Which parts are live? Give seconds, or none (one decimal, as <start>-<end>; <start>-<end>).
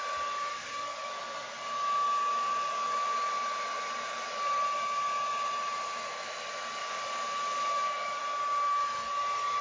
0.0-0.5; 1.2-2.2; 3.3-6.8; 8.2-9.6